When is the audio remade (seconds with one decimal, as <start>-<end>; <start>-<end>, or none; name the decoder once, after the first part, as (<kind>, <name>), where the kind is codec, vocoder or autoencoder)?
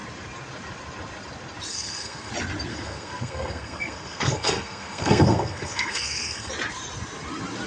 1.7-2.3 (codec, SNAC); 2.7-6.5